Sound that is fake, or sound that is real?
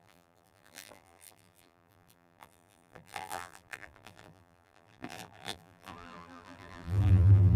fake